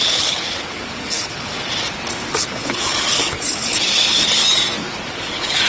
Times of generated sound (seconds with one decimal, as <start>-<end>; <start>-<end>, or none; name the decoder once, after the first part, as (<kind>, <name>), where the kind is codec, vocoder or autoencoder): 0.0-1.5 (codec, HILCodec); 2.4-4.4; 5.1-5.7